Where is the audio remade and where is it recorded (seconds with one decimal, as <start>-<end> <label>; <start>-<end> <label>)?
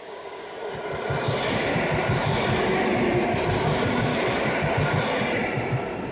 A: 0.0-0.6 remade; 0.6-3.6 recorded; 3.6-4.1 remade; 4.1-6.1 recorded